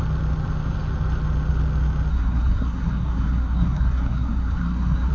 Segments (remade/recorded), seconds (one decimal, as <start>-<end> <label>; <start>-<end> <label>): 0.0-2.1 recorded; 2.1-5.1 remade